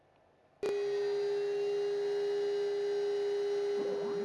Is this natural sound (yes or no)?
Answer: yes